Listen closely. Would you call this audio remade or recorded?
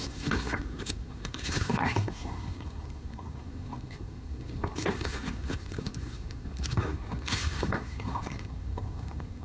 remade